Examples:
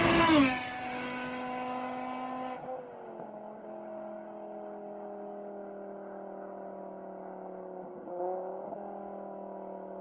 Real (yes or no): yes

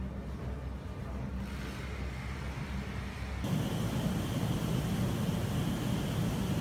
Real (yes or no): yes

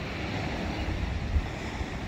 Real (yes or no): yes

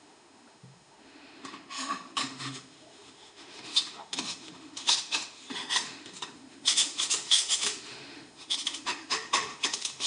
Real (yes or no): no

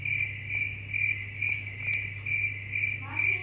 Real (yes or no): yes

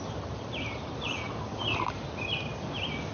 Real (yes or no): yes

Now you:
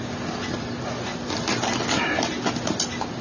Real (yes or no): yes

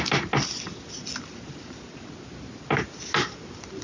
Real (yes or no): yes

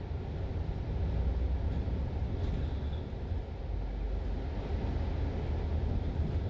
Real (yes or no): yes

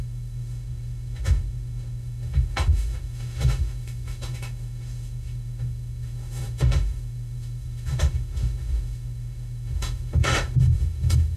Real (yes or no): no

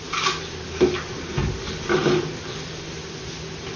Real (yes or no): yes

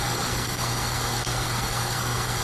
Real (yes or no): no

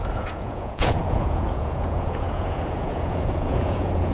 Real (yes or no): no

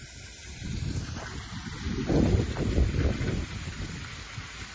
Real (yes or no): yes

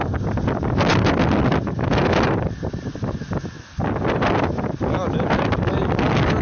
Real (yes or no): yes